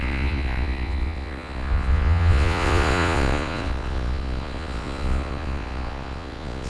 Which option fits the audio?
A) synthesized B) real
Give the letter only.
A